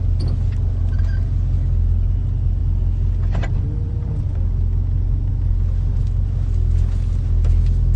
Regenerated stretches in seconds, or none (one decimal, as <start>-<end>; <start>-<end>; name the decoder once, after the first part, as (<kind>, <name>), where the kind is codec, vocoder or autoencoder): none